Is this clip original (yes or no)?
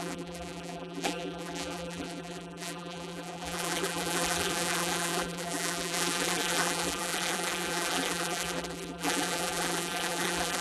no